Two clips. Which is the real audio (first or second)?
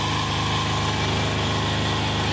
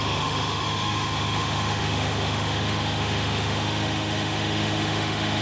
first